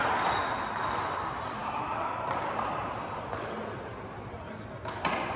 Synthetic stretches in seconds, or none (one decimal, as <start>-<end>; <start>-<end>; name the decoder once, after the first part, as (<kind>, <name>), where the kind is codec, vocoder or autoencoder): none